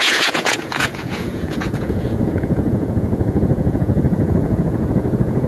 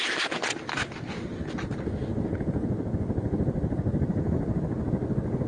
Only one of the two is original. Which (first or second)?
second